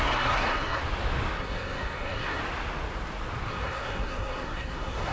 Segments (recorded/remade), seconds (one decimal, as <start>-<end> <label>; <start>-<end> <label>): 0.0-0.8 remade; 0.8-1.4 recorded; 1.4-2.4 remade; 2.4-3.5 recorded; 3.5-5.1 remade